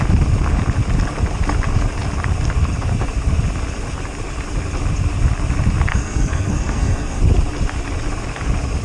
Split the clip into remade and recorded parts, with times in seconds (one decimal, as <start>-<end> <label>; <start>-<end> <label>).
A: 0.0-5.9 recorded; 5.9-7.2 remade; 7.2-8.8 recorded